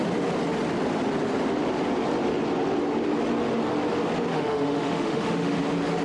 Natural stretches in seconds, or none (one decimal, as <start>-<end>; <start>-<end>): 0.0-4.3; 5.6-6.0